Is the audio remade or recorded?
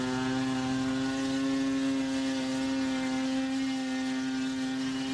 recorded